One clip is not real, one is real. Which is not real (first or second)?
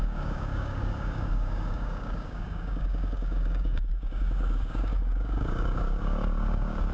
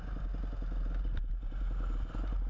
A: first